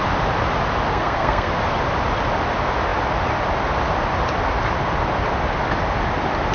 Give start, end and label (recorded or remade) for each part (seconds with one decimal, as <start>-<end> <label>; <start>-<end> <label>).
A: 0.0-0.9 recorded; 0.9-1.5 remade; 1.5-6.5 recorded